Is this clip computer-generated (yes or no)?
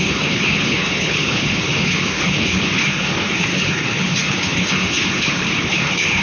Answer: yes